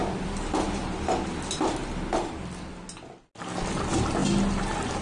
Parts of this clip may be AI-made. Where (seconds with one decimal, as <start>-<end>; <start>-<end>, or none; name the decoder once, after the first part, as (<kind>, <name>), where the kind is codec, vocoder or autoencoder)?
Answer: none